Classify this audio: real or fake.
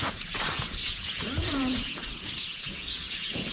fake